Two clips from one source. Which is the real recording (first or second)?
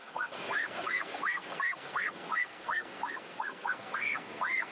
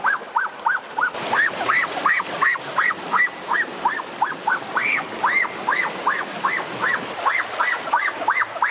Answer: second